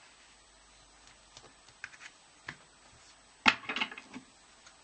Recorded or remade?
recorded